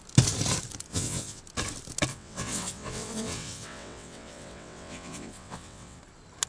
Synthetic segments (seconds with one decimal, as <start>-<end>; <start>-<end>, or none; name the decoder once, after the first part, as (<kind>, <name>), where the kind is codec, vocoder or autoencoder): 0.9-1.4 (vocoder, WaveNeXt); 2.1-6.0